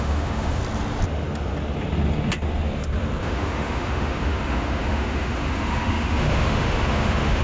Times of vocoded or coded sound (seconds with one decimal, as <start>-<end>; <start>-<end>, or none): 0.0-0.6; 3.2-7.4